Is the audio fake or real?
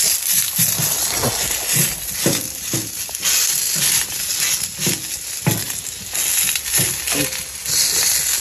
real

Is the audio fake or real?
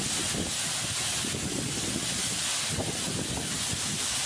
real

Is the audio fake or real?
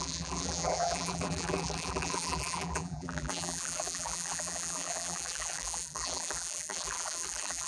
fake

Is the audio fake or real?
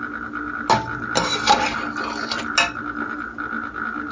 real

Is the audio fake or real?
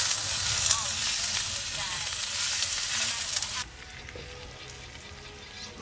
real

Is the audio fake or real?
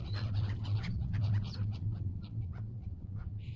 fake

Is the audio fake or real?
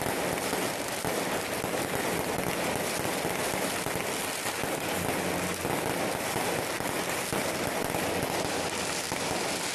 real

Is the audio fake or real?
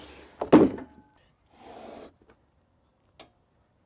real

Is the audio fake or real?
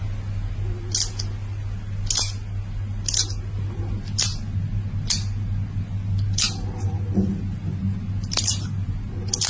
real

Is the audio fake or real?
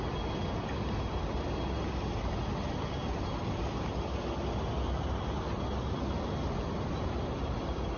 real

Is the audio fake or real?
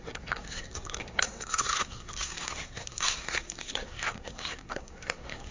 fake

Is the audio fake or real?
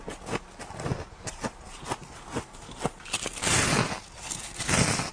real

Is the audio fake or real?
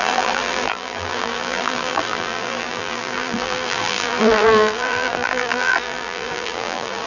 fake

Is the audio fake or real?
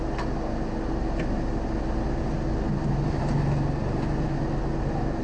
real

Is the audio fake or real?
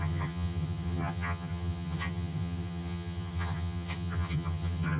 fake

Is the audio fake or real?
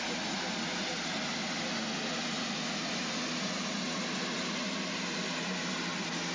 real